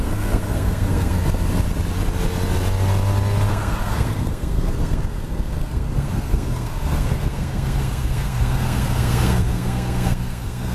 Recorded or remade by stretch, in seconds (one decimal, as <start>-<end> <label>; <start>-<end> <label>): 0.0-1.2 remade; 1.2-3.5 recorded; 3.5-10.7 remade